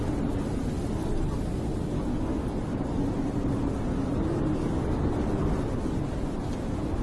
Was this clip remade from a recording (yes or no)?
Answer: no